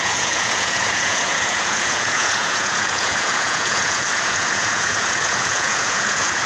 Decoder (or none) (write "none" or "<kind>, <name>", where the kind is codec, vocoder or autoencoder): vocoder, Vocos